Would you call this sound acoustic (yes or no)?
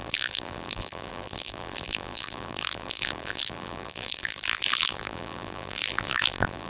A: no